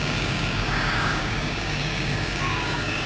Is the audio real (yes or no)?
no